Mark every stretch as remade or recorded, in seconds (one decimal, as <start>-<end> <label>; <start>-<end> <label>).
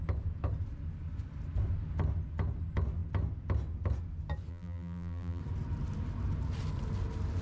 0.0-4.5 recorded; 4.5-5.4 remade; 5.4-7.4 recorded